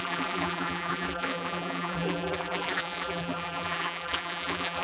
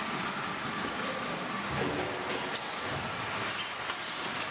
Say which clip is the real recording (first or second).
second